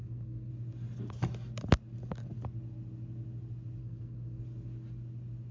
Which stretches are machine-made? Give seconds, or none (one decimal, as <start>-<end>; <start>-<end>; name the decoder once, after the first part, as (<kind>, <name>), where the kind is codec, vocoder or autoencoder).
0.0-0.5 (codec, SNAC); 3.8-4.4